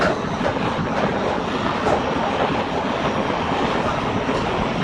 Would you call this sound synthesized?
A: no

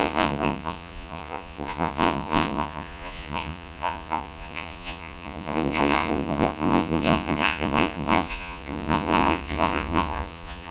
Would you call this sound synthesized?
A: yes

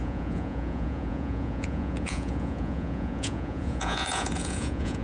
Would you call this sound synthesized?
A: yes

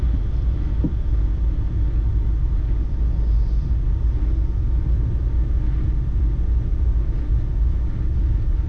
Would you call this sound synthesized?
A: no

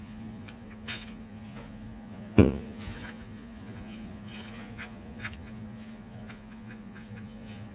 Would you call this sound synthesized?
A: yes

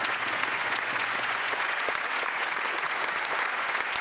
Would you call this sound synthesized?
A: yes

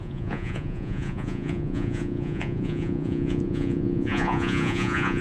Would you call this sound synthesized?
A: yes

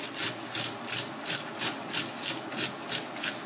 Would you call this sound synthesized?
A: no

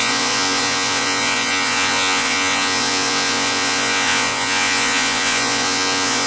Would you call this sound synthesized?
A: yes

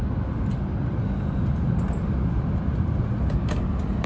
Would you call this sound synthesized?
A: no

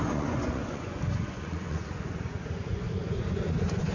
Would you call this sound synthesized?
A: yes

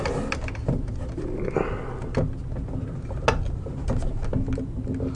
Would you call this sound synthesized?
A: no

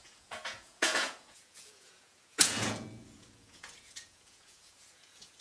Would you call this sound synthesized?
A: yes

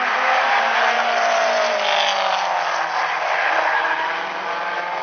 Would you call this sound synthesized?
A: no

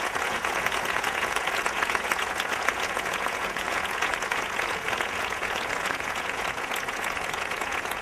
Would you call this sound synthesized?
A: yes